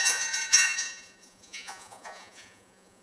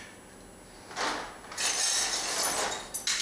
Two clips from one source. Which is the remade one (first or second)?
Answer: first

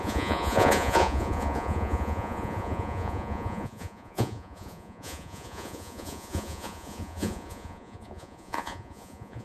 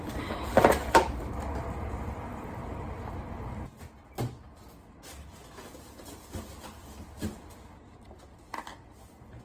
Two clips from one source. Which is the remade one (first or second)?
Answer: first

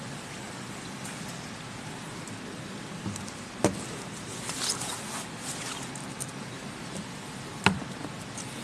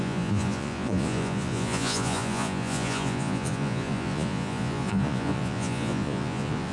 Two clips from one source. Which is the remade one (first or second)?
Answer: second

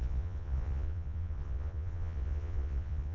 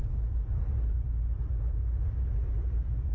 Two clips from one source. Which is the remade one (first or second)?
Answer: first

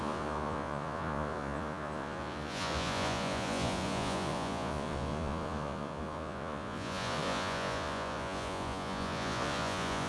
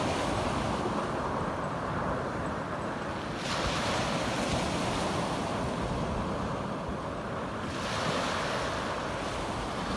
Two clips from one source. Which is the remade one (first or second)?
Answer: first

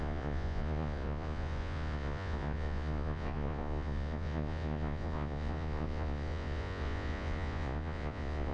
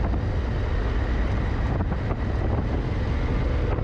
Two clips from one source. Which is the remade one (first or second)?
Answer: first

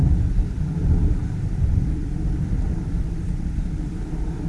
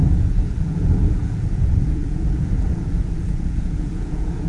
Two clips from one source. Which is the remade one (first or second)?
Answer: second